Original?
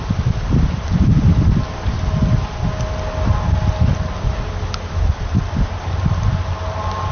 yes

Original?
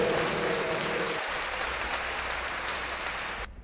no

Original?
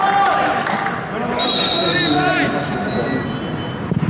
yes